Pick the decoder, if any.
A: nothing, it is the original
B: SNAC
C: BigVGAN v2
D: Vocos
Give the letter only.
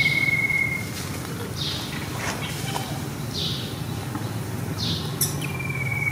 A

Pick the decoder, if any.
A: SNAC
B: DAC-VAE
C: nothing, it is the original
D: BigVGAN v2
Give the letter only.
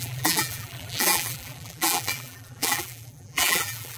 D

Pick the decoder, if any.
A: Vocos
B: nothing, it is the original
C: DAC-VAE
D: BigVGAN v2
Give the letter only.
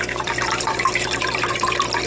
D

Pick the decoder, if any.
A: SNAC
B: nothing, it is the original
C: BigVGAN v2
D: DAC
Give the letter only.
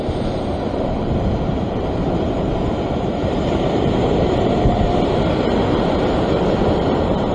C